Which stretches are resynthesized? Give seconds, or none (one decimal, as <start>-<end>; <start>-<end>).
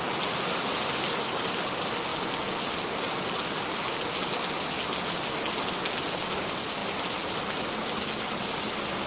none